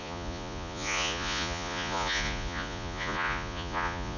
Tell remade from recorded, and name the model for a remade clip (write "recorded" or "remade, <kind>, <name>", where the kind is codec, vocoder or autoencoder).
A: remade, vocoder, Vocos